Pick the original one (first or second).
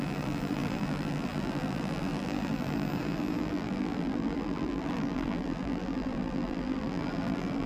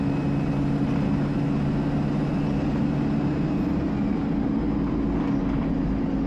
second